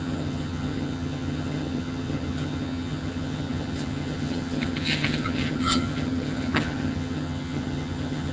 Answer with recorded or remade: remade